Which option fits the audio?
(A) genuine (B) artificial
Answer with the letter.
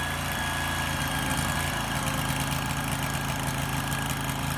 A